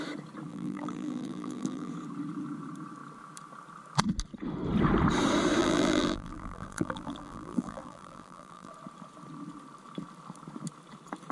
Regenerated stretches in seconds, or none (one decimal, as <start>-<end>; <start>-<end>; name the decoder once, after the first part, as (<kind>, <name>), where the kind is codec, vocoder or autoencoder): 0.5-1.9 (vocoder, BigVGAN v2); 5.6-8.7